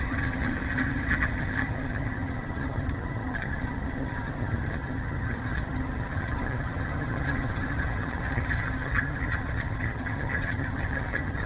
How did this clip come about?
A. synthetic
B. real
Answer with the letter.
A